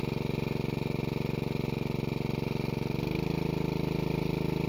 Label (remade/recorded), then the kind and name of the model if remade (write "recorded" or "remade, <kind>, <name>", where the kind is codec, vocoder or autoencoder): recorded